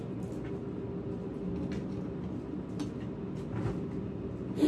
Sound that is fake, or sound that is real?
real